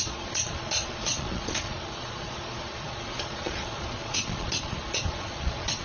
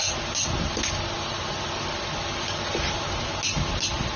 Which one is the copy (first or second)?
first